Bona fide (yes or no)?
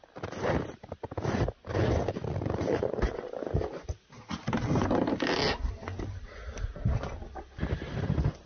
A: yes